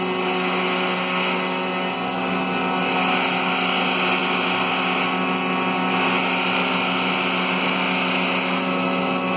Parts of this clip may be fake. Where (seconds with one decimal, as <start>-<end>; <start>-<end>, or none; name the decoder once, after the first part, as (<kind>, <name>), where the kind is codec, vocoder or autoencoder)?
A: none